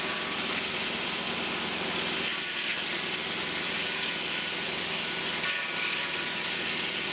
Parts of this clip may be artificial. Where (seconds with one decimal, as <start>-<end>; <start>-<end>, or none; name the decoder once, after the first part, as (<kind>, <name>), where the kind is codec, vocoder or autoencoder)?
none